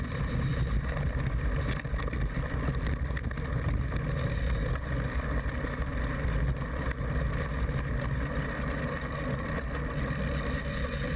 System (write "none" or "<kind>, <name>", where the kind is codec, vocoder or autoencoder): none